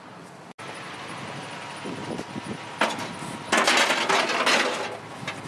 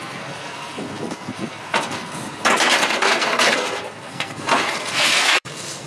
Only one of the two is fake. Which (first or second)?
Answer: second